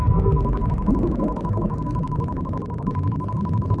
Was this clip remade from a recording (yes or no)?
yes